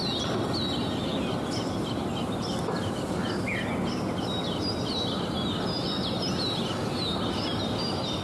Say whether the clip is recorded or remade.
recorded